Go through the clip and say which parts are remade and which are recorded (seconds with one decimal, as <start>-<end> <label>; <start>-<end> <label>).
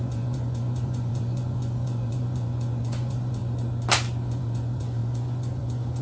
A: 0.0-3.4 remade; 3.4-4.4 recorded; 4.4-6.0 remade